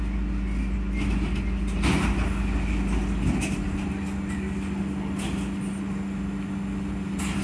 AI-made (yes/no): no